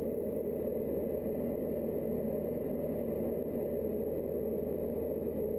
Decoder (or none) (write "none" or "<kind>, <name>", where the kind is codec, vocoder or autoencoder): none